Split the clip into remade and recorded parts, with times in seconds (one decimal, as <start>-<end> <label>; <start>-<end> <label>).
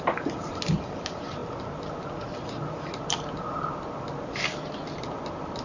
0.0-5.6 recorded